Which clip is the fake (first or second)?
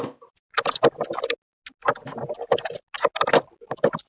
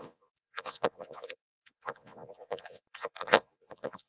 second